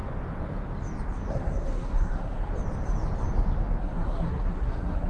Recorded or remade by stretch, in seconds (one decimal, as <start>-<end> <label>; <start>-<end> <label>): 0.0-1.3 recorded; 1.3-2.5 remade; 2.5-3.8 recorded; 3.8-5.1 remade